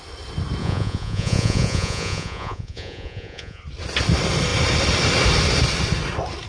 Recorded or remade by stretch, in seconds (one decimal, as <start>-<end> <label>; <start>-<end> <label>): 0.0-0.6 recorded; 0.6-3.6 remade; 3.6-6.5 recorded